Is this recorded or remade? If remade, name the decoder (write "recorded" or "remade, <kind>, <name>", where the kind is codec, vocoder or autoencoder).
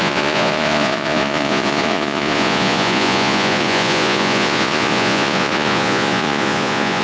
remade, vocoder, Vocos